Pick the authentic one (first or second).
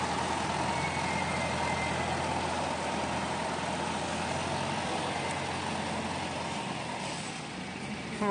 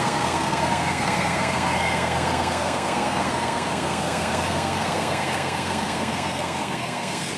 first